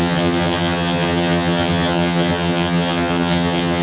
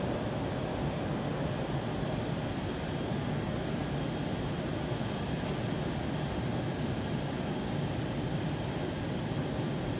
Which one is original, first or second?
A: second